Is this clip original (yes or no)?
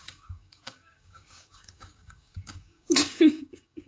no